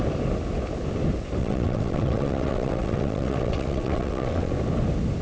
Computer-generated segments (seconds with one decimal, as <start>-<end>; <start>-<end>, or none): 1.4-4.5